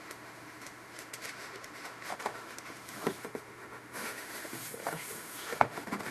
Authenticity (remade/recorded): remade